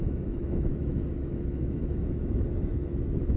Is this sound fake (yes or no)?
yes